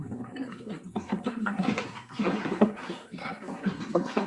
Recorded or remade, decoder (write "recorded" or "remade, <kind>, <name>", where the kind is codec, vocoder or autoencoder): remade, codec, SNAC